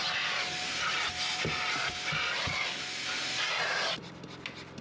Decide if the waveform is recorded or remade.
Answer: recorded